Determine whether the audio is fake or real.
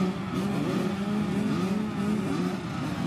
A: real